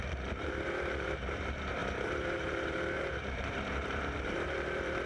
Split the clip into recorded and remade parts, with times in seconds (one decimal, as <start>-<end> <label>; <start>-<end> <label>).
0.0-5.1 remade